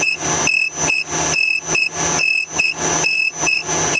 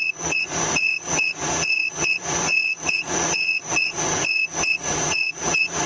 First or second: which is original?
first